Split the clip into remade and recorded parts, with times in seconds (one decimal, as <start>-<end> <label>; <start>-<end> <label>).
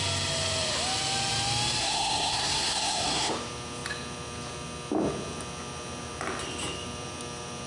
0.0-1.8 recorded; 1.8-3.3 remade; 3.3-7.7 recorded